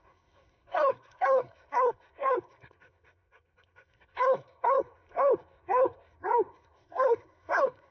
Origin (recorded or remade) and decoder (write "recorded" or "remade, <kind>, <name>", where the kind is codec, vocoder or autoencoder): remade, codec, SNAC